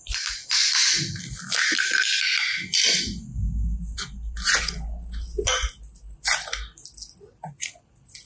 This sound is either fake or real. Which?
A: real